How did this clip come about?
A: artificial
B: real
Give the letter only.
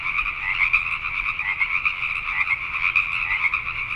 B